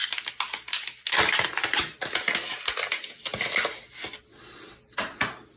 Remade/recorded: recorded